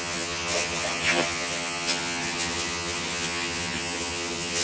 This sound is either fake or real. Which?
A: fake